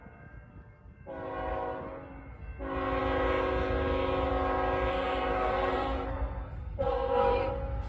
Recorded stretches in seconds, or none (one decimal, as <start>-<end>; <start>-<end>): 0.0-4.9; 7.5-7.9